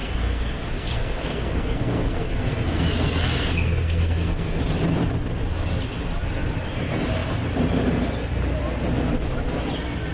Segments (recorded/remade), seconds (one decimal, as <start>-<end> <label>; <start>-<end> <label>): 0.0-4.6 remade; 4.6-10.1 recorded